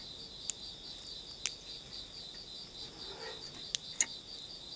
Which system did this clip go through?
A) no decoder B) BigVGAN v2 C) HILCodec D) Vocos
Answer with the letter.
A